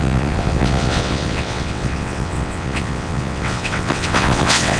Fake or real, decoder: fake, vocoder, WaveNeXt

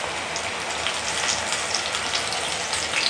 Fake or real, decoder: real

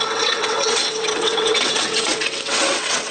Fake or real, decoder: fake, vocoder, WaveNeXt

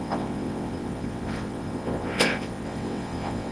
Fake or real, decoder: fake, vocoder, WaveNeXt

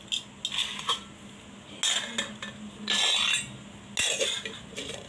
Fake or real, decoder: real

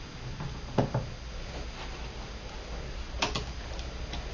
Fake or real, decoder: real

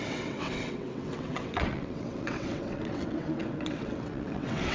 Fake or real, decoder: fake, vocoder, WaveNeXt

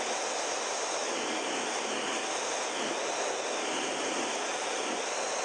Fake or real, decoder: real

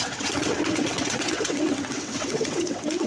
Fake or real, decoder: fake, vocoder, WaveNeXt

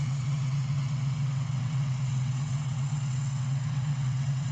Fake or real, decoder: fake, vocoder, WaveNeXt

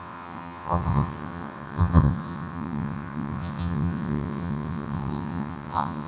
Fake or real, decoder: fake, vocoder, WaveNeXt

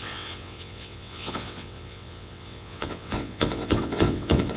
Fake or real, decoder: fake, vocoder, WaveNeXt